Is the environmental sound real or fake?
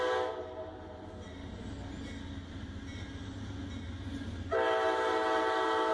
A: real